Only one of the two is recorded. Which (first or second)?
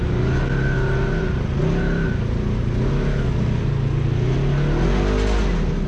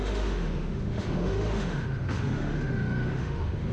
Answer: first